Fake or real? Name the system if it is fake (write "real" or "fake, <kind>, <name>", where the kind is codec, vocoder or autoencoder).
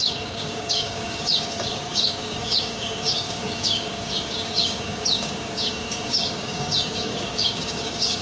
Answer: fake, codec, DAC